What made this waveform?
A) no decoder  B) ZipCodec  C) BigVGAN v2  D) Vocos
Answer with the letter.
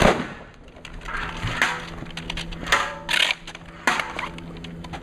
A